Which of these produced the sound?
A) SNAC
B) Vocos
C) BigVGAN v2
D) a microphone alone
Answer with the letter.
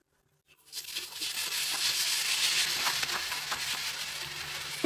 D